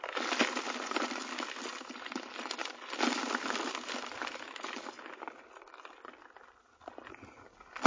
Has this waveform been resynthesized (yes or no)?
no